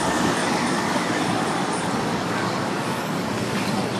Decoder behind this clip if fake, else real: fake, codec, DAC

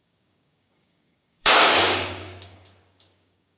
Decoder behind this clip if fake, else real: fake, codec, DAC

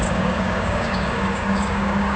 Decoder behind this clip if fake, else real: fake, codec, DAC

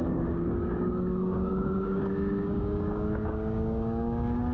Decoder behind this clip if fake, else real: fake, codec, DAC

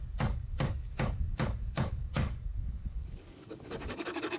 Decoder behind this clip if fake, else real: fake, codec, DAC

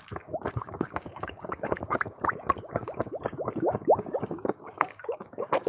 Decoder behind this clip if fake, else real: fake, codec, DAC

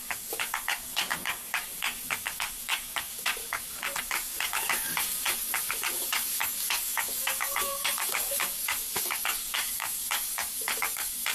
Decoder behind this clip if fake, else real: fake, codec, DAC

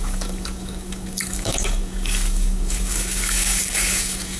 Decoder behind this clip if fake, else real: fake, codec, DAC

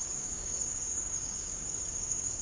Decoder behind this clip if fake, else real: fake, codec, DAC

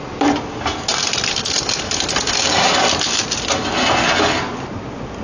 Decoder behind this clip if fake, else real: real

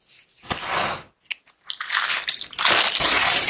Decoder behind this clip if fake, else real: real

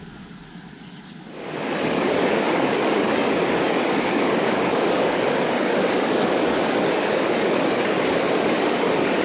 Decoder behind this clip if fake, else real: fake, codec, DAC